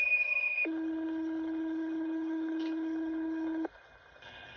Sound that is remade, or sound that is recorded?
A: remade